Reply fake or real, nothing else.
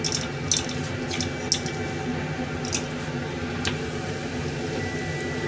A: real